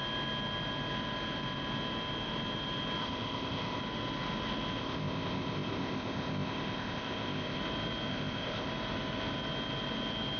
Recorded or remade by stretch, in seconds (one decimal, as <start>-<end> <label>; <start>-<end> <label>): 0.0-3.0 recorded; 3.0-3.8 remade; 3.8-4.8 recorded; 4.8-7.6 remade; 7.6-8.1 recorded; 8.1-8.7 remade; 8.7-10.4 recorded